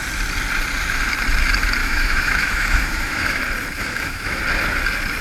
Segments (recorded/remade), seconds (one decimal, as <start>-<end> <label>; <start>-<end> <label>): 0.0-1.8 recorded; 1.8-3.4 remade; 3.4-3.8 recorded; 3.8-4.4 remade; 4.4-5.2 recorded